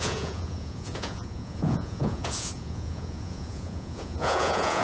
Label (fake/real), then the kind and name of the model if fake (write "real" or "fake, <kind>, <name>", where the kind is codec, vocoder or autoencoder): fake, vocoder, Vocos